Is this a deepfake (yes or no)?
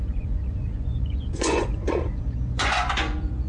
yes